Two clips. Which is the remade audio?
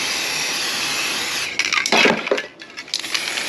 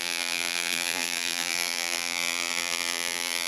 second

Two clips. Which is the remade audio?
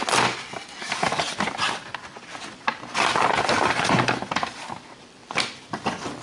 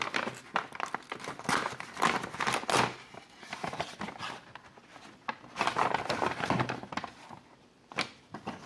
first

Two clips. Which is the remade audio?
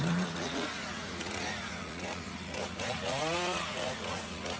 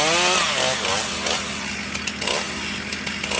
first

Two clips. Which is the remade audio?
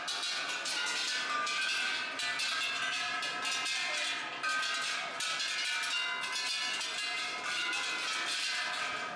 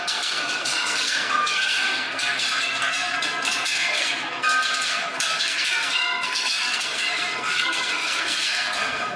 second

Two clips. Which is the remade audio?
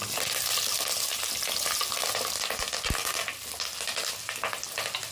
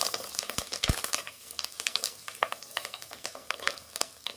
second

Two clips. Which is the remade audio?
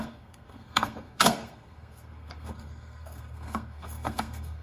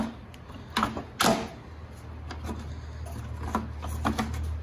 first